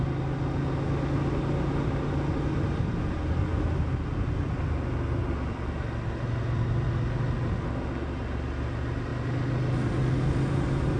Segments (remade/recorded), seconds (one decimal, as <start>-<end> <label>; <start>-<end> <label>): 0.0-11.0 recorded

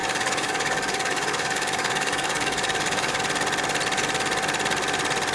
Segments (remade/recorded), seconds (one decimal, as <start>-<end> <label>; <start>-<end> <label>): 0.0-3.2 remade; 3.2-5.3 recorded

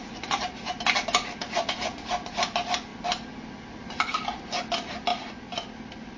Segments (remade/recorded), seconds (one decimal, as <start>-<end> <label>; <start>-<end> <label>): 0.0-6.2 recorded

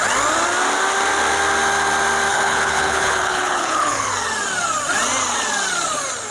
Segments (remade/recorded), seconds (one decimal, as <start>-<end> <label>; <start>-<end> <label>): 0.0-2.3 recorded; 2.3-4.1 remade; 4.1-6.3 recorded

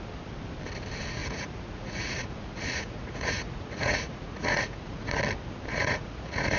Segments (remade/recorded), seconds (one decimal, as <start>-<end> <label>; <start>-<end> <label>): 0.0-1.2 recorded; 1.2-5.2 remade; 5.2-5.7 recorded; 5.7-6.6 remade

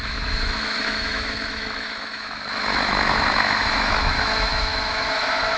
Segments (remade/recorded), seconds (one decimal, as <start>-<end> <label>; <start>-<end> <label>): 0.0-5.6 remade

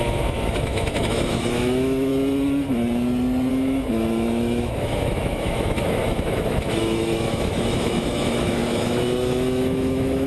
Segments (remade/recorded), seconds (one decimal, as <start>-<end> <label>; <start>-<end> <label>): 0.0-2.1 remade; 2.1-3.5 recorded; 3.5-10.3 remade